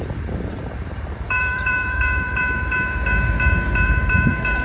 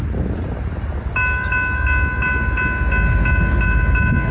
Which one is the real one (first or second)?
second